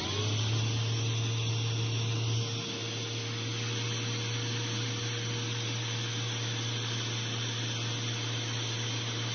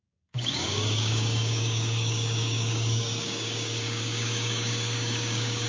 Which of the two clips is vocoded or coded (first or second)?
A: second